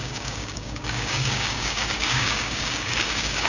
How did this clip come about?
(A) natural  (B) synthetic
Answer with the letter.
B